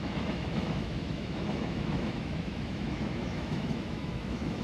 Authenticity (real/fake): fake